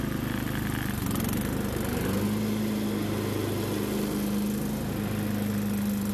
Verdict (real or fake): real